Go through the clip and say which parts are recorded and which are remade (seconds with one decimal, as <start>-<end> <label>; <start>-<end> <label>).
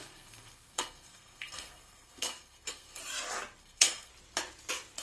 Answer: 0.0-3.0 remade; 3.0-3.6 recorded; 3.6-4.1 remade; 4.1-5.0 recorded